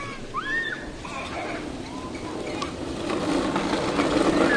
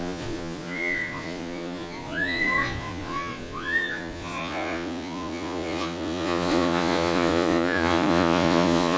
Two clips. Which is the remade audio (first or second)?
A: second